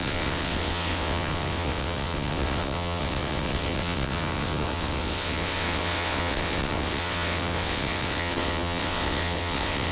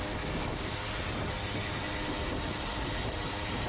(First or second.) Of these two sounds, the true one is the second